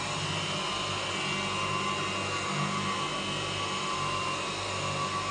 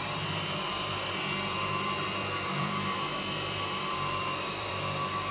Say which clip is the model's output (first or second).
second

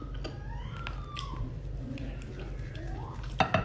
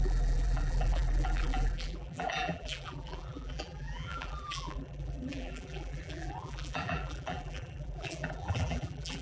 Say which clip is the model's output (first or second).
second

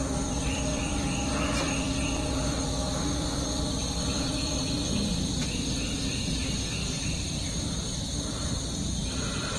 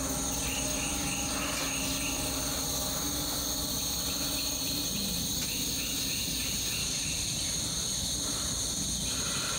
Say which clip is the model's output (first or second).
first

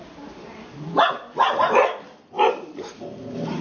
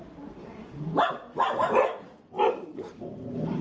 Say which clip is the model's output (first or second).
second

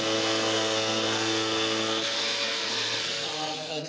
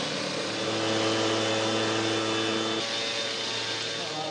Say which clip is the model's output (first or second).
first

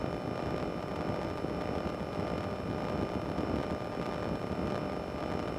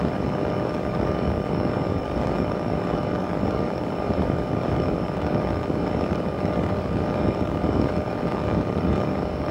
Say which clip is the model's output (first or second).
second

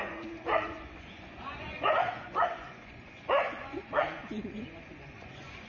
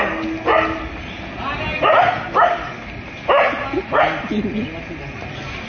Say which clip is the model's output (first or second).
first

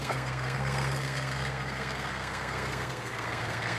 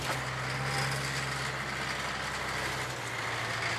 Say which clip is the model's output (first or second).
first